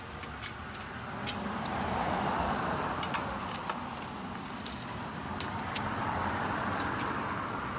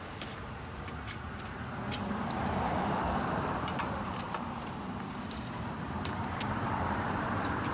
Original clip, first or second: first